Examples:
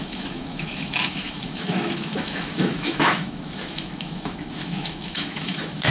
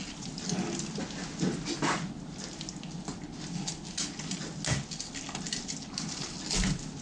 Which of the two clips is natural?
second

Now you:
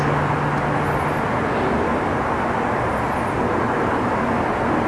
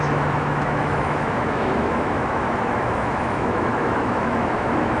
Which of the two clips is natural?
first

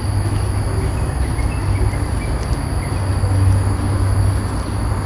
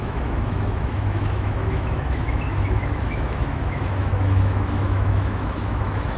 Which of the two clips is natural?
first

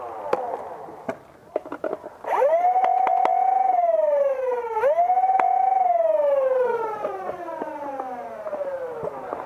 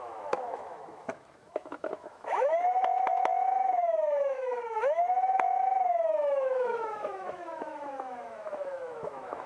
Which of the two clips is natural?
first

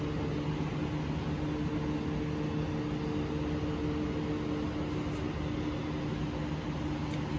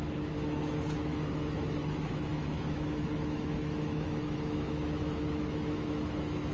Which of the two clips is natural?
first